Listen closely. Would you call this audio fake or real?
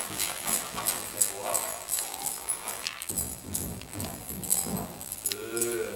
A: fake